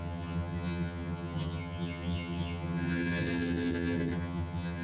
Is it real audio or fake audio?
fake